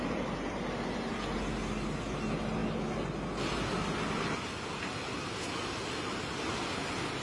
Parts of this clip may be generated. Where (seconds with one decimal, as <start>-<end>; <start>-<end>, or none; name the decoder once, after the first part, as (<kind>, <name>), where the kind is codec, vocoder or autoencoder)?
none